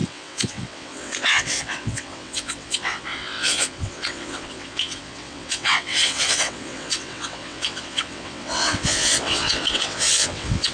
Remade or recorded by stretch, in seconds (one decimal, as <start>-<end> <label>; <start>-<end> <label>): 0.0-10.7 remade